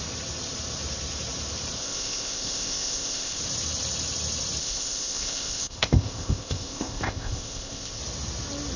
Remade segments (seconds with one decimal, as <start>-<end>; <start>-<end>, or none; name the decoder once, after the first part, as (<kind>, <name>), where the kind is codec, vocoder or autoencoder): 1.8-3.4 (codec, ZipCodec); 4.6-8.0